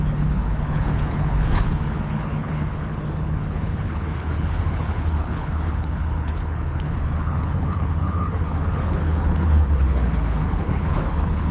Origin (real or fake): fake